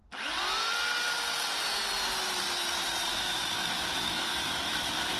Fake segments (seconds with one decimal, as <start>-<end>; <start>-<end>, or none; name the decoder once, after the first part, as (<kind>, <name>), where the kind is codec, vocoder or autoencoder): 3.1-5.2 (autoencoder, DAC-VAE)